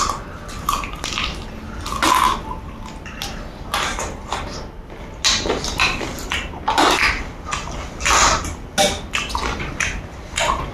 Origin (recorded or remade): recorded